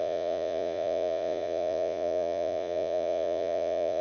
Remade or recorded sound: remade